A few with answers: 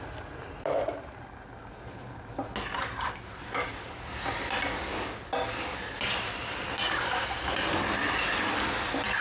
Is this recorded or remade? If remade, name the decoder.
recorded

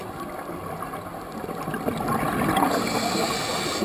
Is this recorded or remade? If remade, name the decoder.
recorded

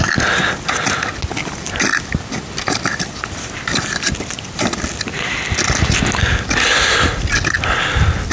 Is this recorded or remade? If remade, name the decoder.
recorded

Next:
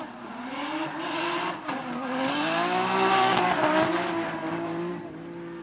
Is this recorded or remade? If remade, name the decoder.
recorded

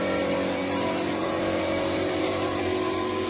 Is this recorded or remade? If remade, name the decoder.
remade, vocoder, BigVGAN v2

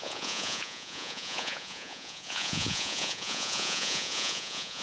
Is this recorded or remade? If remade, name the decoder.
remade, vocoder, Vocos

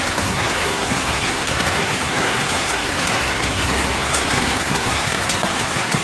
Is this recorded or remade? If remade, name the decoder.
remade, codec, SNAC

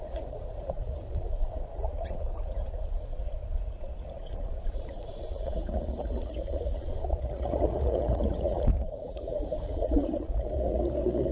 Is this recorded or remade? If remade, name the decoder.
remade, vocoder, Vocos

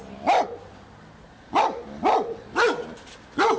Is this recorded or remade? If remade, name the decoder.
recorded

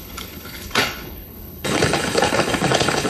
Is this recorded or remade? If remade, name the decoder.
remade, codec, HILCodec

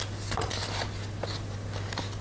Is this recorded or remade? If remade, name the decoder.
recorded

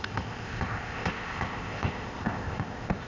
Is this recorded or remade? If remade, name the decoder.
remade, codec, ZipCodec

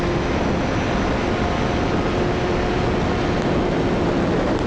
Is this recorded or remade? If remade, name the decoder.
recorded